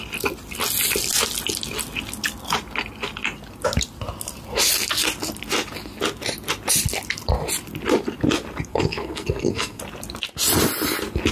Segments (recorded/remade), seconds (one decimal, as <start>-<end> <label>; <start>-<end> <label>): 0.0-8.7 recorded; 8.7-9.8 remade; 9.8-11.3 recorded